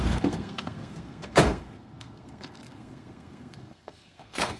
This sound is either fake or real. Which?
fake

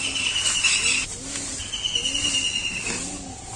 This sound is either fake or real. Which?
real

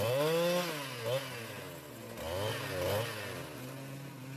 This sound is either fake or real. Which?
real